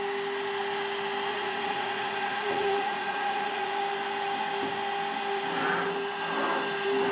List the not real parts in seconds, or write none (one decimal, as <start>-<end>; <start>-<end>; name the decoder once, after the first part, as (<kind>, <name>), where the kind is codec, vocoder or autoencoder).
1.3-3.7 (vocoder, Vocos)